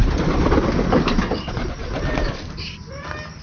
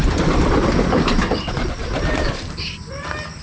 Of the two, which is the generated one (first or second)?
second